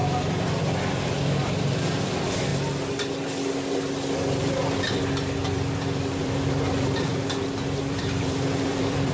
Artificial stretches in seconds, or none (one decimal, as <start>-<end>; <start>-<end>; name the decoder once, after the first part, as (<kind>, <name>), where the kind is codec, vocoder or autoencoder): 0.6-2.5 (vocoder, BigVGAN v2); 6.2-7.1; 7.8-9.1